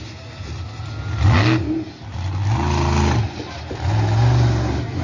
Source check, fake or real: real